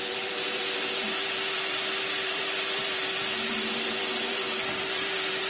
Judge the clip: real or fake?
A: fake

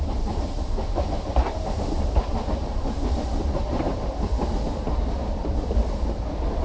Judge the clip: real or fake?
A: fake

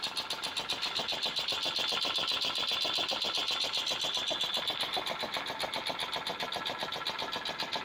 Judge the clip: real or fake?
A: real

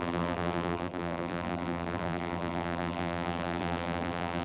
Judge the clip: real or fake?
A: fake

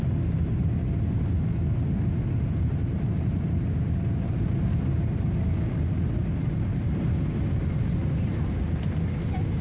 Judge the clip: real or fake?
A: real